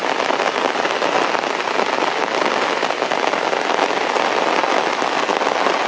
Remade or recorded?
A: recorded